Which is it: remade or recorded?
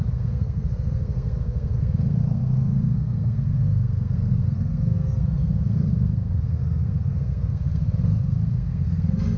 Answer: remade